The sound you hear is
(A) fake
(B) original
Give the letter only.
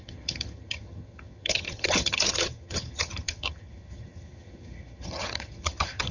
A